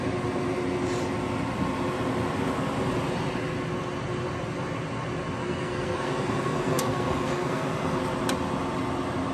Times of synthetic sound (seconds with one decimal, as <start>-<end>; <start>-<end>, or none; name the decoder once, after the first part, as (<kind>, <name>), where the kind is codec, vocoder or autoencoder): 5.4-8.0 (codec, SNAC)